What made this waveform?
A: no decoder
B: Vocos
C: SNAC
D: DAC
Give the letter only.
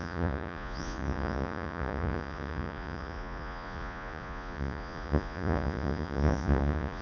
B